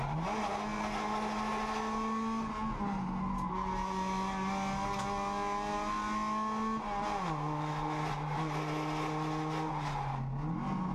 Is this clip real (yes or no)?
yes